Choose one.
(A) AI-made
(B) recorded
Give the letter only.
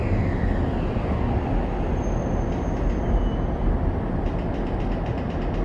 B